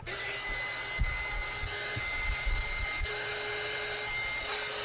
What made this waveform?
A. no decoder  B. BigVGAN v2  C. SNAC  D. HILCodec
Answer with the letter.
A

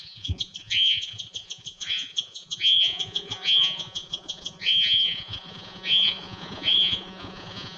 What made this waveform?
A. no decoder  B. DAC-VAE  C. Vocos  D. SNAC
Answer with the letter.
C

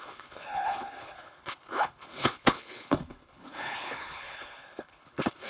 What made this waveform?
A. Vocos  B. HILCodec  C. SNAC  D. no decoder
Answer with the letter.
B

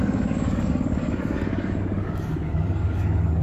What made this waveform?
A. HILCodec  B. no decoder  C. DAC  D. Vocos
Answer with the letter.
C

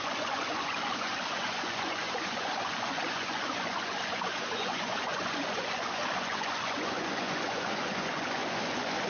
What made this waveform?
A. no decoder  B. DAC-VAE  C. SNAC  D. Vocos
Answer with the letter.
D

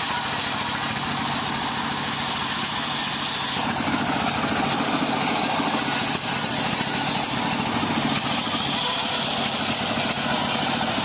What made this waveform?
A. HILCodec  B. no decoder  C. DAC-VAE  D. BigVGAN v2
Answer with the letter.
B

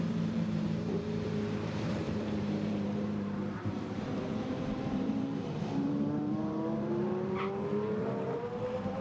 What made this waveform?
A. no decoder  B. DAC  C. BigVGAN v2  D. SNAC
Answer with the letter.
C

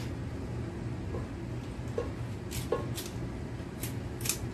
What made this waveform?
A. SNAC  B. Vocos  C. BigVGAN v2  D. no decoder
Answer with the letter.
D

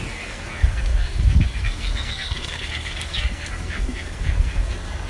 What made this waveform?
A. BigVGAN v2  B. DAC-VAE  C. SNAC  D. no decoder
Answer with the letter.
C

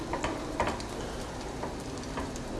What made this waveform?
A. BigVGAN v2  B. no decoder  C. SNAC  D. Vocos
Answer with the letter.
B